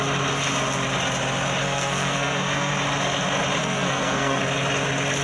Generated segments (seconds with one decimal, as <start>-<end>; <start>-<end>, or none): 1.6-2.7; 3.6-4.4